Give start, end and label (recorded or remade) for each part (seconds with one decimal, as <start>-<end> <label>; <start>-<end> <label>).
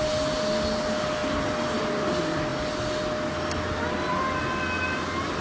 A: 0.0-5.4 recorded